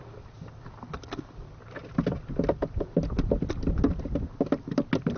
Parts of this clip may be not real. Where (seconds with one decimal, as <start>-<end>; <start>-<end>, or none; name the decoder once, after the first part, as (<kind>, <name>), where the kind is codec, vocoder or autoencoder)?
none